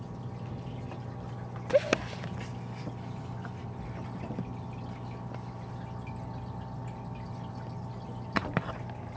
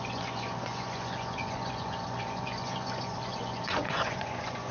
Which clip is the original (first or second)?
first